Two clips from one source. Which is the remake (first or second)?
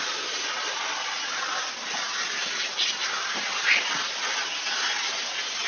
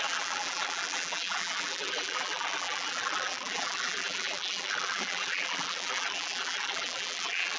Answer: second